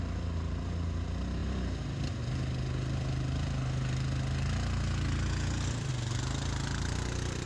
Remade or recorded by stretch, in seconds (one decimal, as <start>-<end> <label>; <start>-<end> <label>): 0.0-7.5 recorded